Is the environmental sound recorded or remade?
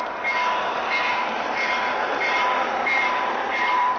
remade